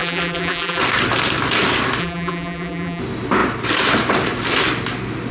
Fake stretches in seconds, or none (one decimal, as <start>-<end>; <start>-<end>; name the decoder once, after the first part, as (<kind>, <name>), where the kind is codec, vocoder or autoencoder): 0.0-0.8 (vocoder, BigVGAN v2); 2.0-3.0